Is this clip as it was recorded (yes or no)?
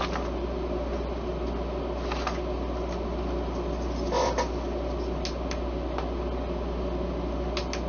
yes